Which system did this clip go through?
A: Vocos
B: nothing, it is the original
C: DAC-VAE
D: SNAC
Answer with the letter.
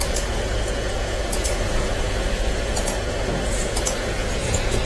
A